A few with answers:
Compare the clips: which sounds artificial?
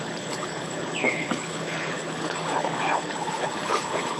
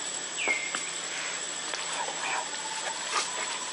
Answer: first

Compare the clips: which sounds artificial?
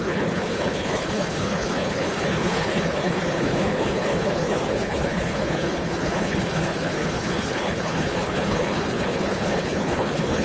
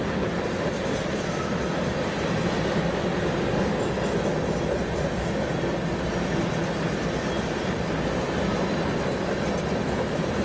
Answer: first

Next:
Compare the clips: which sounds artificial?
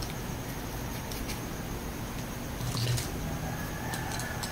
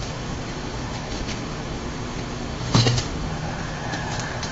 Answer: second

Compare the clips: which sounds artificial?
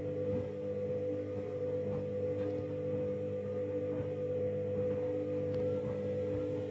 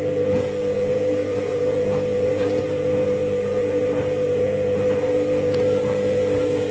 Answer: second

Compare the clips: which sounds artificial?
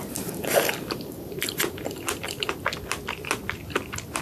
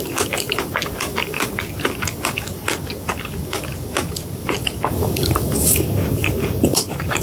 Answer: second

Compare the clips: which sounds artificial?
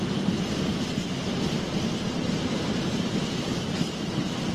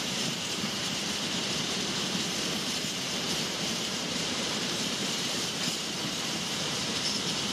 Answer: second